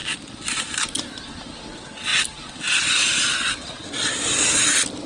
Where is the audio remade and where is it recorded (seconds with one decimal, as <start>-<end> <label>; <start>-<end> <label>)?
0.0-1.1 remade; 1.1-2.1 recorded; 2.1-5.1 remade